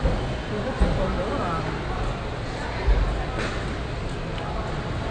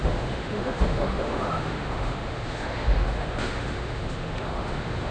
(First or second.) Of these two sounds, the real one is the first